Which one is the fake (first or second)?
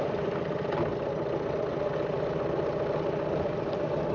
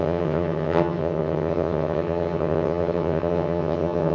second